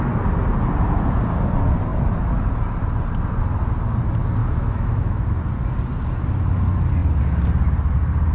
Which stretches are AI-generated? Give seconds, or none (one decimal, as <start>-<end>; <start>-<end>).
4.4-5.4